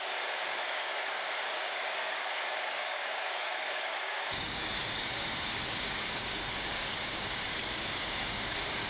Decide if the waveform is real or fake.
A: fake